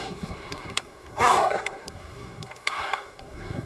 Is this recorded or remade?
remade